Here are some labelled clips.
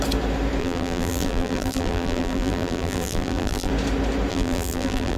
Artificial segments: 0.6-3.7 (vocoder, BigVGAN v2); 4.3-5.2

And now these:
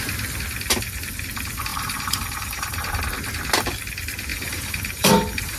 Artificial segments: 1.7-3.0 (vocoder, BigVGAN v2); 4.3-5.6